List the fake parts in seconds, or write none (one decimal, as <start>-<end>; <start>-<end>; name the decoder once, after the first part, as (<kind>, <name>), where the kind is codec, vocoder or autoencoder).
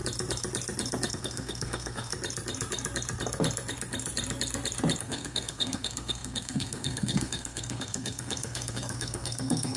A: 1.1-2.1 (codec, SNAC); 5.0-9.8